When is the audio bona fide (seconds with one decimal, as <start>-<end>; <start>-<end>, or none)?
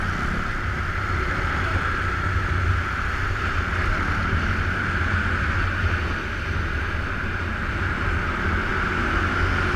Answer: 0.0-9.8